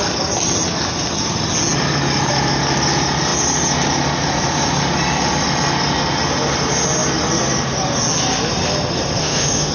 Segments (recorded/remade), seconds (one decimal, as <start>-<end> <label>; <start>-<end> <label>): 0.0-9.2 recorded; 9.2-9.7 remade